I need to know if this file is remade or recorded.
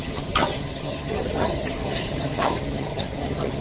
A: remade